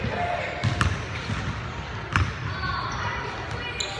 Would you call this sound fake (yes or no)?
no